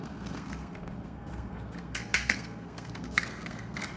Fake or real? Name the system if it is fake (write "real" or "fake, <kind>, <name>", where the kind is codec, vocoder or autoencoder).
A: fake, codec, SNAC